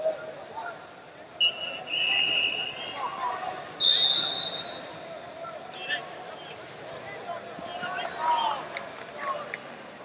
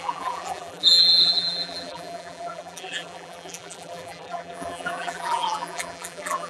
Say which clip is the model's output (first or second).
second